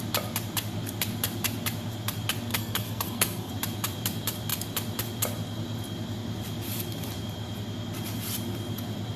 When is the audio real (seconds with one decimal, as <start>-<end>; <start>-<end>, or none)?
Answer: 0.0-2.5; 3.5-9.2

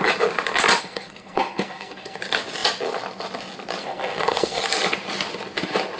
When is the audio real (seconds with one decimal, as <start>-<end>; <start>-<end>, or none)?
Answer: 0.0-0.8; 2.2-3.8; 4.6-6.0